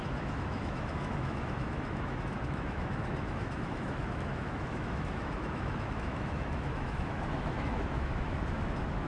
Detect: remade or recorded remade